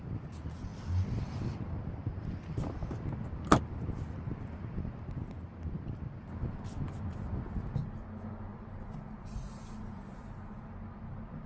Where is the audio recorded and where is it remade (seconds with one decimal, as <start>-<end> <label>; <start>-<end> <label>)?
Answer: 0.0-11.5 recorded